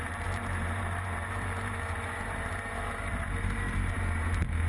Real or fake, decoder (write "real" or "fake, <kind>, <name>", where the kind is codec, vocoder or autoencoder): fake, vocoder, BigVGAN v2